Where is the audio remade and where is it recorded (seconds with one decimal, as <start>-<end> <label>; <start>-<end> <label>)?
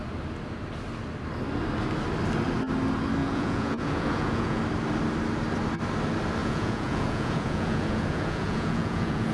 0.0-3.2 recorded; 3.2-4.6 remade; 4.6-6.4 recorded; 6.4-9.3 remade